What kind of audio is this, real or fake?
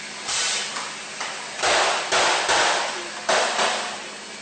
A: real